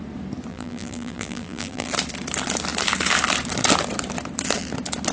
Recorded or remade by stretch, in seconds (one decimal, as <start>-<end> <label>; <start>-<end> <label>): 0.0-0.5 recorded; 0.5-1.9 remade; 1.9-5.1 recorded